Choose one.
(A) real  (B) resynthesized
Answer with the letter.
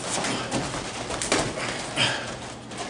A